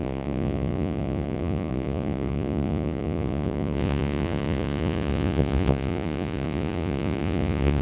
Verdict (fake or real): fake